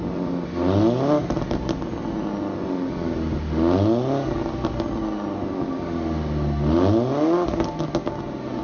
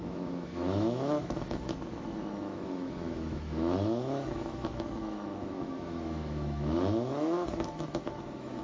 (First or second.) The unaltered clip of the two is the first